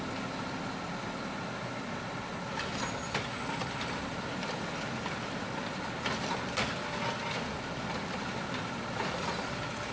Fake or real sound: real